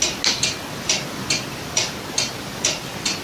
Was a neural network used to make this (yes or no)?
no